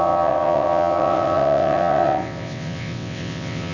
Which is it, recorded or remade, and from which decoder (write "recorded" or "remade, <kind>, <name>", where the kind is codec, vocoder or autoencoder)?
remade, vocoder, WaveNeXt